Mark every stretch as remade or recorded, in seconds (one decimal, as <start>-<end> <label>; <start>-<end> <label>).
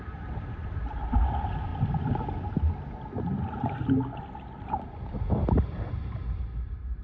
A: 0.0-1.7 remade; 1.7-5.9 recorded; 5.9-7.0 remade